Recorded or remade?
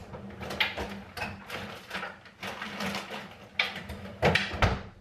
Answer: recorded